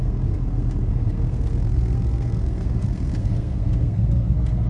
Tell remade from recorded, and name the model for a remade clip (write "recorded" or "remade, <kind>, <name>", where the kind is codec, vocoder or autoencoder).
remade, codec, SNAC